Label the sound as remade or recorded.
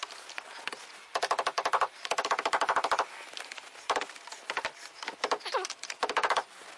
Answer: recorded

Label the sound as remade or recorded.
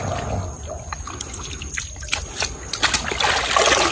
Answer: recorded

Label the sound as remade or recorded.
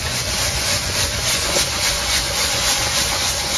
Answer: remade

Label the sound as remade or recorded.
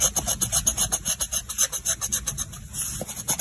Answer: recorded